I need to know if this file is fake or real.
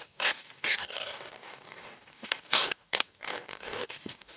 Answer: fake